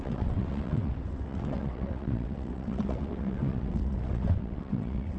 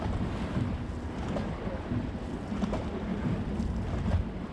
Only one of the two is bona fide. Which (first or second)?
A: second